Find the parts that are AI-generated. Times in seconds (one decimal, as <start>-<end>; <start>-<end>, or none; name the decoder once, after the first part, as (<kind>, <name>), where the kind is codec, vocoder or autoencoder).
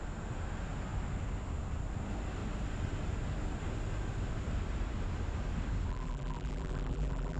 5.9-7.4 (vocoder, BigVGAN v2)